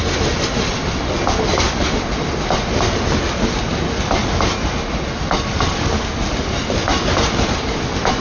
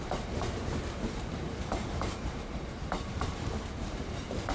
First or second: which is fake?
second